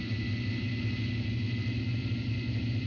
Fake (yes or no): no